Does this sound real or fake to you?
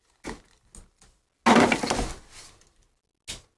real